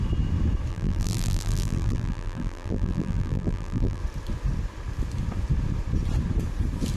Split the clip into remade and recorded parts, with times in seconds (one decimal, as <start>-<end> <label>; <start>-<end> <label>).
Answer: 0.0-0.7 recorded; 0.7-4.0 remade; 4.0-7.0 recorded